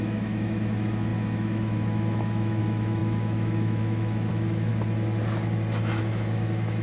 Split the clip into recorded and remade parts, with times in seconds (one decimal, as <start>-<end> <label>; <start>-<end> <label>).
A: 0.0-4.7 remade; 4.7-6.0 recorded; 6.0-6.8 remade

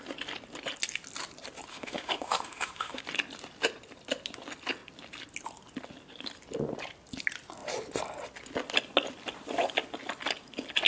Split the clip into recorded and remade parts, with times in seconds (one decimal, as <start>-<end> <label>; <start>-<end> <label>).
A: 0.0-1.7 recorded; 1.7-3.0 remade; 3.0-10.9 recorded

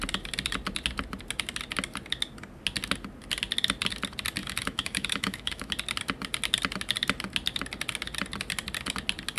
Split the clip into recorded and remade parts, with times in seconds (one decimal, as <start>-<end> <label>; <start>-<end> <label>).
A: 0.0-4.4 recorded; 4.4-5.7 remade; 5.7-9.4 recorded

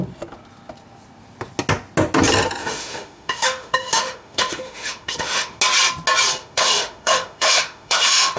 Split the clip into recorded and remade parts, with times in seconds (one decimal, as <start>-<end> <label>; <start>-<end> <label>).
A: 0.0-2.6 recorded; 2.6-5.6 remade; 5.6-6.4 recorded; 6.4-8.4 remade

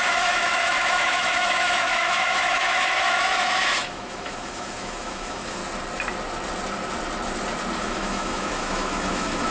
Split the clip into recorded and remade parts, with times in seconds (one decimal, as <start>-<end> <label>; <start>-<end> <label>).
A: 0.0-5.6 remade; 5.6-7.8 recorded; 7.8-9.5 remade

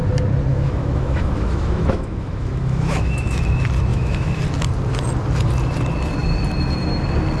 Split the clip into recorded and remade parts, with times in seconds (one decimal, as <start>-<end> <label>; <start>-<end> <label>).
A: 0.0-0.5 recorded; 0.5-3.4 remade; 3.4-3.9 recorded; 3.9-4.4 remade; 4.4-7.4 recorded

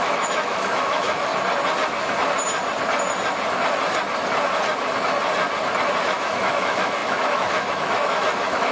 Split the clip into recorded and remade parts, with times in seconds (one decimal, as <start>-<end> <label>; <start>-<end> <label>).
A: 0.0-1.3 remade; 1.3-6.0 recorded; 6.0-8.7 remade

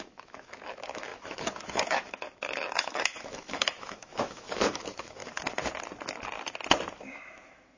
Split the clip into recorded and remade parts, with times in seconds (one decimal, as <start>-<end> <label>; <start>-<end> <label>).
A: 0.0-5.2 remade; 5.2-7.0 recorded; 7.0-7.8 remade